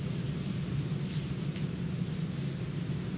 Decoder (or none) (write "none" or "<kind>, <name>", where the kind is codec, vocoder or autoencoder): none